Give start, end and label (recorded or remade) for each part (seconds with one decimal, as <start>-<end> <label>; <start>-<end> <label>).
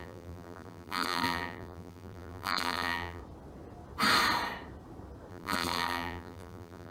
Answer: 0.0-3.2 remade; 3.2-5.3 recorded; 5.3-6.9 remade